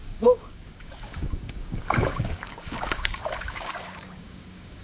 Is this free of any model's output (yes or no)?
no